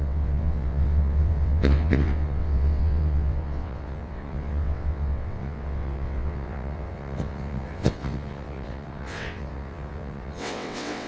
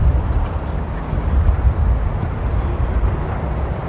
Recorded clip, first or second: second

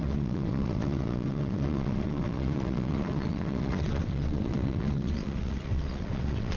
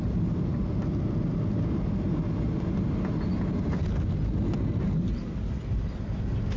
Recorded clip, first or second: second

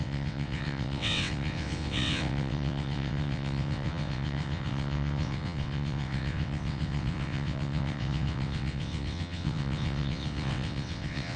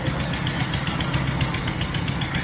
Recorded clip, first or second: second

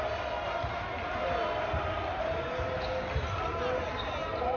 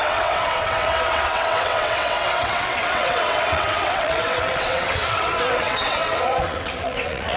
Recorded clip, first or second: first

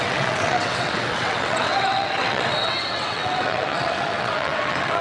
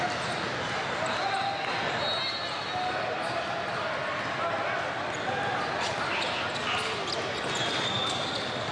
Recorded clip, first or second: second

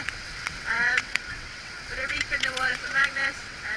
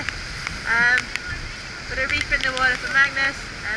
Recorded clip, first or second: second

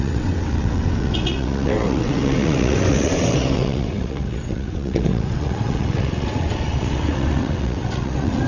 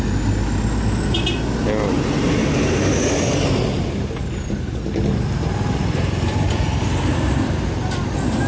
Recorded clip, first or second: second